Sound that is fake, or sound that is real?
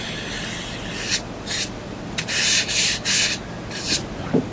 real